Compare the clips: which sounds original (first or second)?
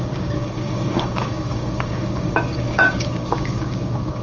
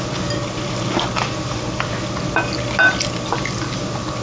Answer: second